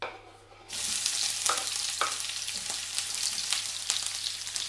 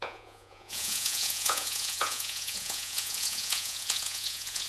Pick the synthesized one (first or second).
second